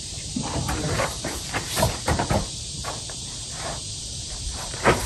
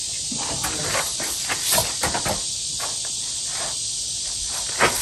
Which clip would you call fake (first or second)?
first